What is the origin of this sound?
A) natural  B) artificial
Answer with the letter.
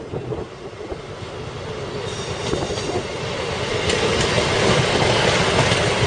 A